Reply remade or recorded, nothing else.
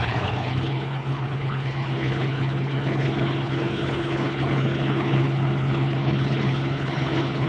remade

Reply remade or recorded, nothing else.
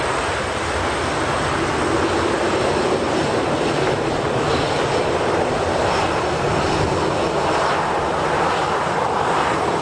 recorded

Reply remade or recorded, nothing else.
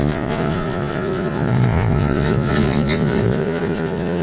remade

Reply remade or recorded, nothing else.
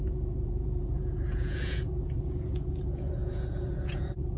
remade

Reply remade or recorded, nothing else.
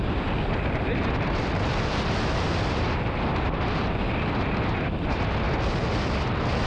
recorded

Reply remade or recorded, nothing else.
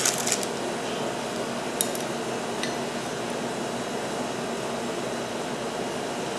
recorded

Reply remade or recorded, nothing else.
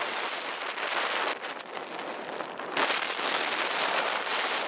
recorded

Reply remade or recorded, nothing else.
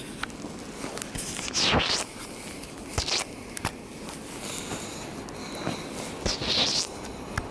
recorded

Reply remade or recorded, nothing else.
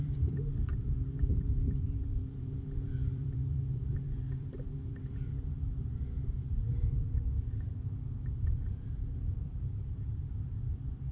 remade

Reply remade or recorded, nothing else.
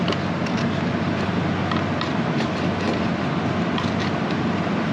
recorded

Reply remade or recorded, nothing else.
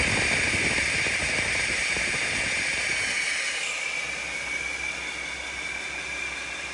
recorded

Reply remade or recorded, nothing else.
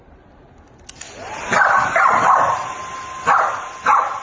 recorded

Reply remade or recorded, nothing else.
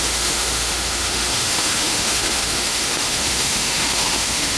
remade